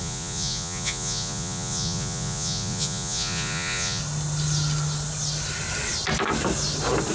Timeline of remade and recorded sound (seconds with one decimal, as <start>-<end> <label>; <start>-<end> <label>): 0.0-4.0 remade; 4.0-7.1 recorded